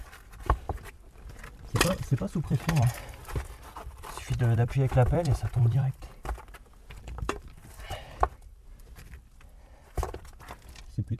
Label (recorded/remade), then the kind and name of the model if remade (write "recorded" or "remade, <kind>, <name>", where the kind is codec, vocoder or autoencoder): remade, vocoder, BigVGAN v2